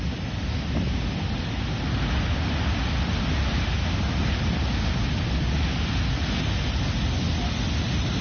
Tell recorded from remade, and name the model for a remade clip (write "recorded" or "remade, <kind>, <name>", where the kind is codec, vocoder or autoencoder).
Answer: recorded